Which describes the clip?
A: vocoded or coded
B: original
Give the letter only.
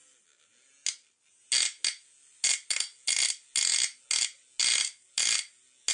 B